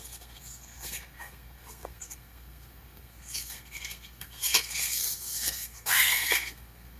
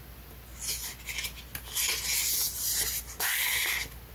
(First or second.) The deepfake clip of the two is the first